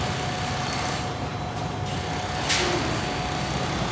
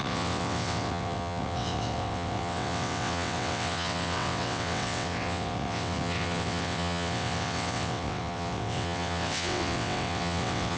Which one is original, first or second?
first